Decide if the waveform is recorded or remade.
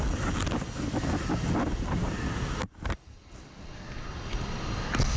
recorded